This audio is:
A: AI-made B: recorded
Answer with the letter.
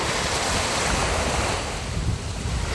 B